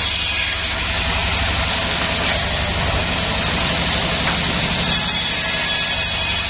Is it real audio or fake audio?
real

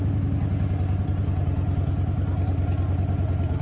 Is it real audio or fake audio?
real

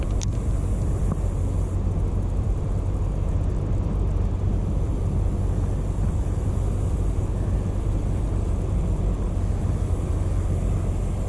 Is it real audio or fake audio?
real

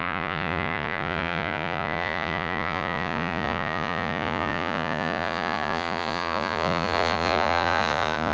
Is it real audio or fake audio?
fake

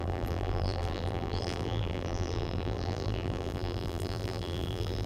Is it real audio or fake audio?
fake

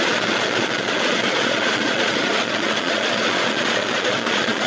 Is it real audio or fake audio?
fake